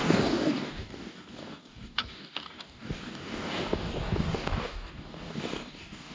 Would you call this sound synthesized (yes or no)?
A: yes